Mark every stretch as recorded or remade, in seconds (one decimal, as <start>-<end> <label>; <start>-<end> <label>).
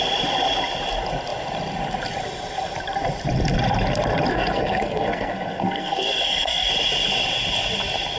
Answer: 0.0-4.3 recorded; 4.3-6.7 remade; 6.7-8.2 recorded